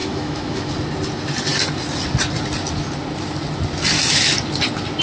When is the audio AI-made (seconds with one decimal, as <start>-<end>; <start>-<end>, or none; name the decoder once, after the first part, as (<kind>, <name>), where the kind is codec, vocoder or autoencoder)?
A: 0.0-0.7 (autoencoder, DAC-VAE)